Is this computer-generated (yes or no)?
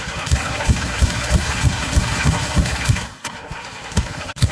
yes